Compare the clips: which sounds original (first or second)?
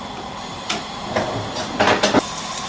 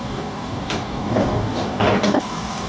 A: first